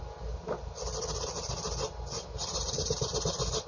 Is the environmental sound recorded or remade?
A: recorded